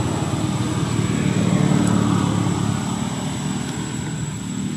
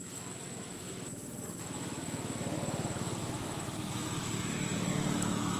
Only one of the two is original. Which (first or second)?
first